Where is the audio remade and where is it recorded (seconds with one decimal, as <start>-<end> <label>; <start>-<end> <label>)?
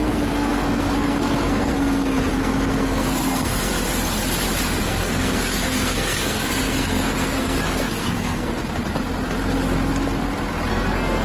0.0-3.7 remade; 3.7-4.8 recorded; 4.8-8.6 remade; 8.6-10.7 recorded; 10.7-11.2 remade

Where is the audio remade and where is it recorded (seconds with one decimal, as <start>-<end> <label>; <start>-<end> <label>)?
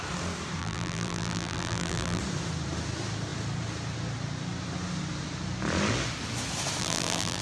0.0-0.6 recorded; 0.6-2.2 remade; 2.2-6.8 recorded; 6.8-7.4 remade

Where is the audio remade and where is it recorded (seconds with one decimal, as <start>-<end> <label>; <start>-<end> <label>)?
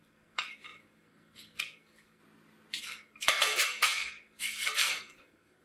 0.0-2.2 remade; 2.2-2.8 recorded; 2.8-5.6 remade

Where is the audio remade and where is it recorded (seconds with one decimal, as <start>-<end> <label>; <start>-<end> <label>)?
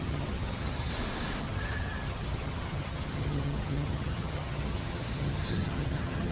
0.0-0.9 remade; 0.9-1.4 recorded; 1.4-6.3 remade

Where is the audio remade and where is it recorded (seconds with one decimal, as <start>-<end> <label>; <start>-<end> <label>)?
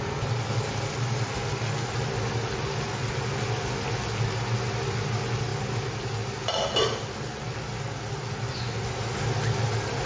0.0-10.1 recorded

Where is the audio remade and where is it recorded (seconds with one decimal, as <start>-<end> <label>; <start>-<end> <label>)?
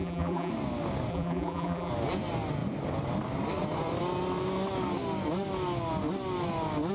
0.0-0.5 remade; 0.5-1.1 recorded; 1.1-1.9 remade; 1.9-6.9 recorded